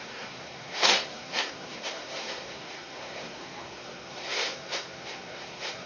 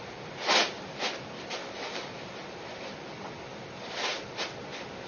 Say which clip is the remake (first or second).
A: first